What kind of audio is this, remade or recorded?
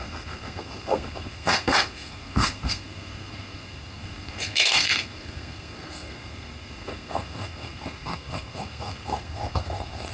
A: remade